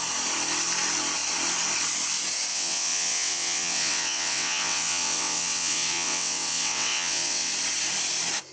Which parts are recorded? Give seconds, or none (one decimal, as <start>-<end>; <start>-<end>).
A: 0.0-2.5; 7.5-8.5